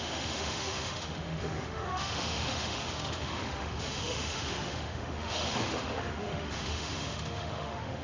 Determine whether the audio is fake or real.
fake